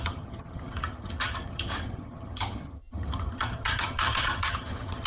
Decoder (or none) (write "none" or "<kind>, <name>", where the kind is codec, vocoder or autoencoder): vocoder, HiFi-GAN